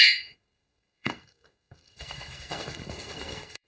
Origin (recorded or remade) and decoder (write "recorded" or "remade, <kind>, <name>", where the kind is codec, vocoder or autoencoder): remade, codec, SNAC